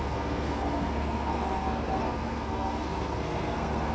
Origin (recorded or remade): remade